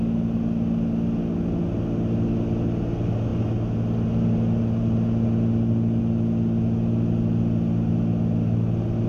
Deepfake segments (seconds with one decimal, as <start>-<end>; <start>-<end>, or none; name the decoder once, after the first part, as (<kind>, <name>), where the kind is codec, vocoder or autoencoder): none

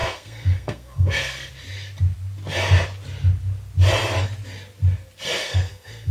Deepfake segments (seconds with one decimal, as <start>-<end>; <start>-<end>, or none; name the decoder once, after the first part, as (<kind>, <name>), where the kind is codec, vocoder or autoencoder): 0.0-1.5 (codec, SNAC); 5.4-6.1